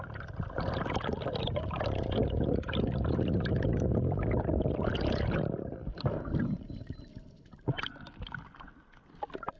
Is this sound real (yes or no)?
no